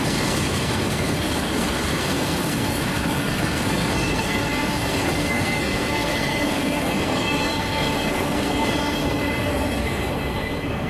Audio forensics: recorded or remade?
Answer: remade